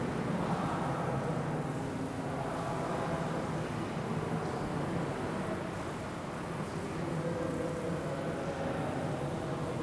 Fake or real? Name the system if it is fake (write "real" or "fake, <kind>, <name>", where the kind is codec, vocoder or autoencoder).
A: real